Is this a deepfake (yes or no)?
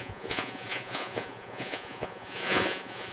yes